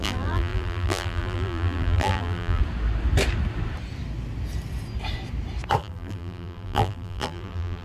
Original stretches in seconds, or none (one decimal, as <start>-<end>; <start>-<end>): 2.6-5.8